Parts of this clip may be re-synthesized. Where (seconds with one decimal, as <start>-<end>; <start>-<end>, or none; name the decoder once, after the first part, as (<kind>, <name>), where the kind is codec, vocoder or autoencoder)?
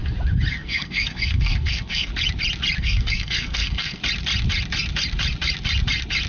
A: 0.5-2.1 (codec, SNAC); 2.8-4.0